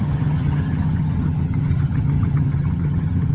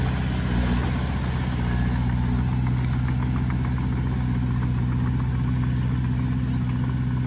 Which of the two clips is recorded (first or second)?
second